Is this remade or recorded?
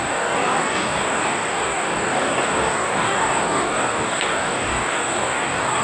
remade